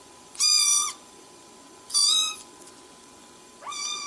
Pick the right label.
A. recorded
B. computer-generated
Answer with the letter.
B